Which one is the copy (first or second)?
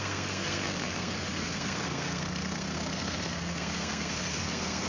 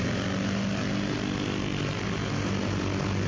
first